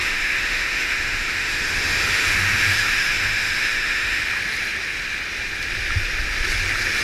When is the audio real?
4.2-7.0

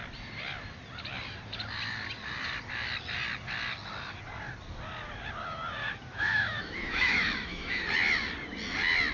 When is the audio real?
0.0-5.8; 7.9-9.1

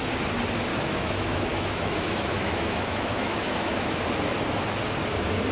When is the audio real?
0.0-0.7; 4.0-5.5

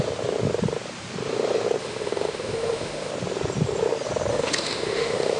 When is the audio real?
0.0-1.8; 3.1-4.3

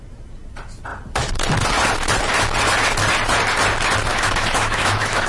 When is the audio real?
0.0-4.1

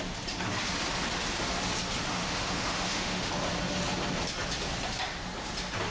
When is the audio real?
0.0-2.2; 3.3-5.9